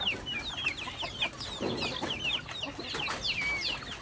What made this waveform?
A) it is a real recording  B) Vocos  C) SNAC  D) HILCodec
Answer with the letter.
A